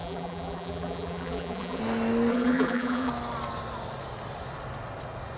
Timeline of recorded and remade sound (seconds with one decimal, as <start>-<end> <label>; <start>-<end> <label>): 0.0-1.8 remade; 1.8-2.3 recorded; 2.3-3.1 remade; 3.1-5.4 recorded